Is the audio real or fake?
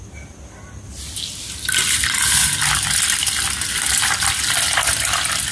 real